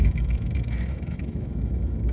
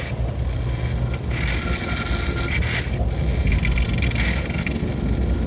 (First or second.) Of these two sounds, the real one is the second